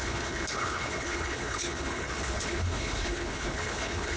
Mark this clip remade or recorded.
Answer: remade